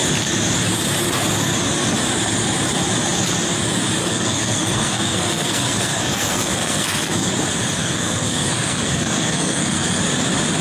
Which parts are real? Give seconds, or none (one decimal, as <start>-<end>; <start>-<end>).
0.0-4.0; 7.3-7.8; 10.0-10.6